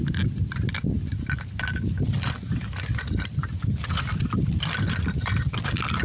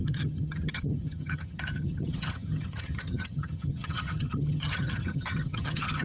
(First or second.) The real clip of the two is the first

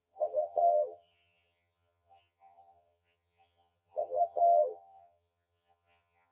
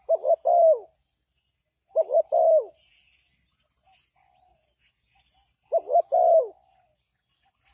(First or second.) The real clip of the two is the second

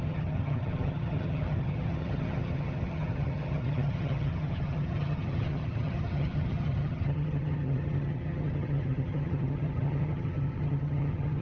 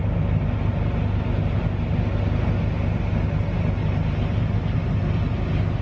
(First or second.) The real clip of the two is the second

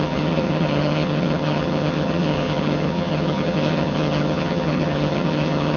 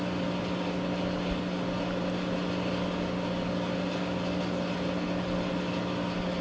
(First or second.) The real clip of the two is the second